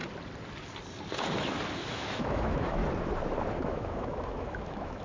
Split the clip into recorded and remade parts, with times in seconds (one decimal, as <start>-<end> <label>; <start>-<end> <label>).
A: 0.0-1.9 recorded; 1.9-2.8 remade; 2.8-3.6 recorded; 3.6-5.0 remade